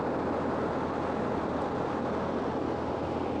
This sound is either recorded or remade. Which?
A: recorded